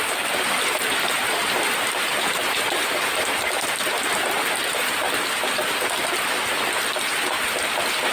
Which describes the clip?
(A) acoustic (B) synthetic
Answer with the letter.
A